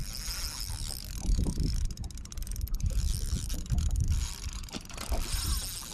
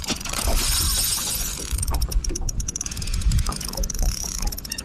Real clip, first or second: first